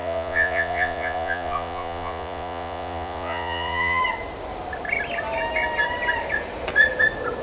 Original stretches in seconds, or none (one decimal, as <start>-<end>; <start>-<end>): 4.0-7.4